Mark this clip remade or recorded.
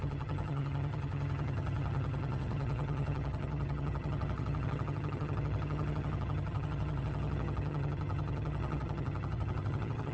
remade